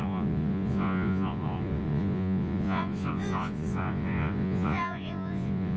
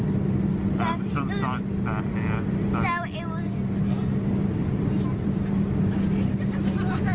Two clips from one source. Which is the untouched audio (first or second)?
second